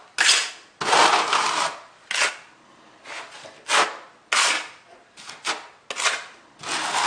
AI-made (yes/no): no